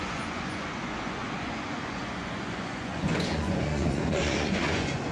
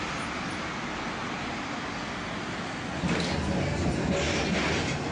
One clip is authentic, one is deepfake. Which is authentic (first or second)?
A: second